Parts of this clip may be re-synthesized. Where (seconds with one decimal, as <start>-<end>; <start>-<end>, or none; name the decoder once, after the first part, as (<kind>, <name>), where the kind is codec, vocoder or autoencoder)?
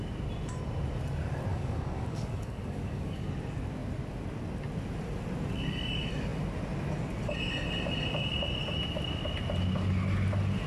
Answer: 1.5-3.3 (codec, DAC)